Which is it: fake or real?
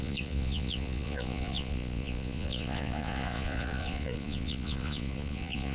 fake